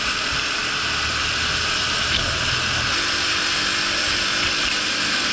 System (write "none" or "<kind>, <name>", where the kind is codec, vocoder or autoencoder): none